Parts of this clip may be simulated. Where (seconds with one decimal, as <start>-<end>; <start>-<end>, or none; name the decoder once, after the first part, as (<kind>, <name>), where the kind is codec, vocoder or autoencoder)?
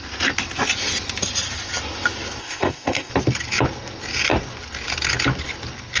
2.4-3.1 (codec, ZipCodec)